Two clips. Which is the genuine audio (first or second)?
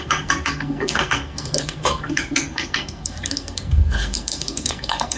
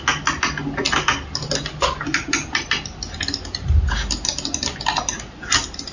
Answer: second